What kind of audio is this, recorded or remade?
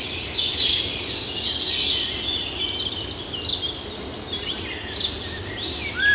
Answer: recorded